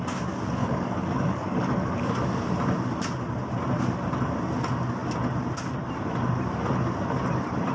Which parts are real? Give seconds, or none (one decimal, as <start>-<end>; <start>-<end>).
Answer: 0.0-0.6; 1.9-7.7